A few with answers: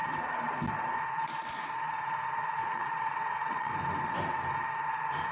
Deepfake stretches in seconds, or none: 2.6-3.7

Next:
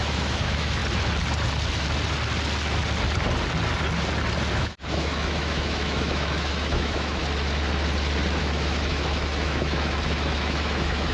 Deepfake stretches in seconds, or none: 0.0-0.8; 4.5-7.2; 8.4-11.1

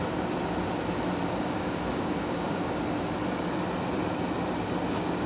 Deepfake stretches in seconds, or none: 1.4-2.8

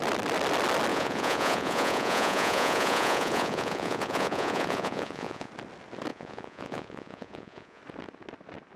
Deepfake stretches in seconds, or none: 0.9-5.5; 6.1-7.8

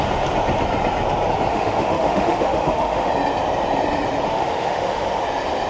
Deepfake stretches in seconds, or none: 1.5-3.1; 4.3-5.2

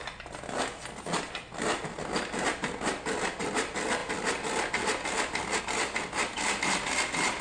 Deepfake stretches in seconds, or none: none